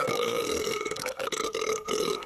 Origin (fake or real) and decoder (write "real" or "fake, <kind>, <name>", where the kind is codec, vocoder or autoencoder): fake, codec, SNAC